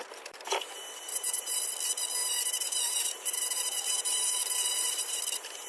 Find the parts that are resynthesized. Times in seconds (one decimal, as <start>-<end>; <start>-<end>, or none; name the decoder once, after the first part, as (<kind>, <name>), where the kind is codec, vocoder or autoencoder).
1.1-1.6 (vocoder, BigVGAN v2); 2.2-5.2